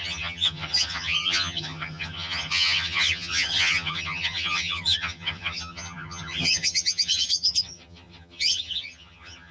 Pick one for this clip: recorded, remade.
remade